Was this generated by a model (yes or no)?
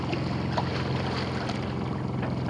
no